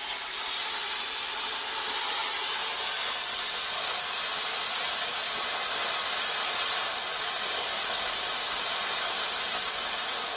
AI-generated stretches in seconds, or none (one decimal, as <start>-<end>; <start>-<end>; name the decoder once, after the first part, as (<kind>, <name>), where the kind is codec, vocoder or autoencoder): 0.0-10.4 (vocoder, BigVGAN v2)